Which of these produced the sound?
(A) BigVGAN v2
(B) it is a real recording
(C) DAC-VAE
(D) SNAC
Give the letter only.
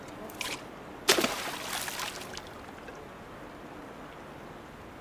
B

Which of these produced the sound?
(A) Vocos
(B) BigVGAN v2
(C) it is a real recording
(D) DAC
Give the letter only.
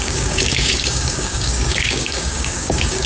D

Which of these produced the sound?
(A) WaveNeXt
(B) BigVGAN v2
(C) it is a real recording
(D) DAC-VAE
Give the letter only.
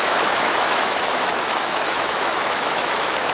D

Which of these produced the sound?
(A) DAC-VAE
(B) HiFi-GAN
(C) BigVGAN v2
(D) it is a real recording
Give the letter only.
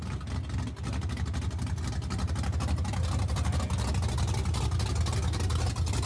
D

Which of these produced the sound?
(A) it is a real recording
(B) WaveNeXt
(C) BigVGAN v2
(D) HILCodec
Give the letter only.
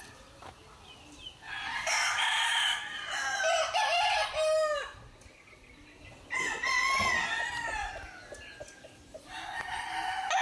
A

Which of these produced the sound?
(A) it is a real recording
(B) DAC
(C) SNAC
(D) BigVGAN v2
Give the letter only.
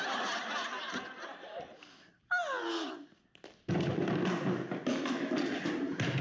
A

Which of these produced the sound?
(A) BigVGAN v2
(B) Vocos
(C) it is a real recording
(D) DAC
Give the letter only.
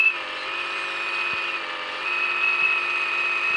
C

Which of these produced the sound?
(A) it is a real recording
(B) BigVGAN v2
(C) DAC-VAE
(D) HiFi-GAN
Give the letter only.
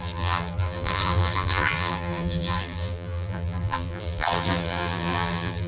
B